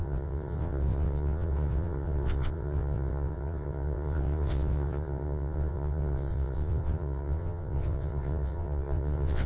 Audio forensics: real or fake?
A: fake